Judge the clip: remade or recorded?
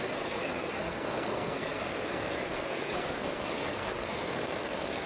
remade